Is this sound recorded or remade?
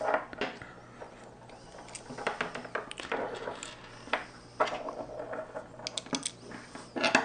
recorded